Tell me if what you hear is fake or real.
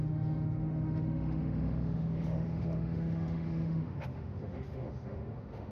fake